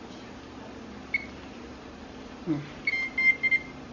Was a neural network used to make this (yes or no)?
no